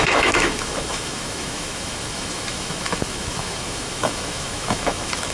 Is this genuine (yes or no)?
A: no